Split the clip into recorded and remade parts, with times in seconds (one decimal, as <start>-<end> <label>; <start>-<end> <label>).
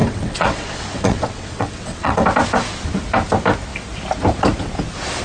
0.0-2.2 remade; 2.2-5.2 recorded